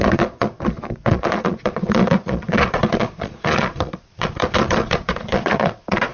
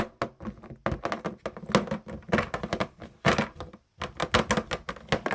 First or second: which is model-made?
first